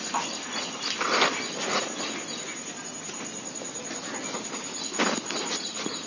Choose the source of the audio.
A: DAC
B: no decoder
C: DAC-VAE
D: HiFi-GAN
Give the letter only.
B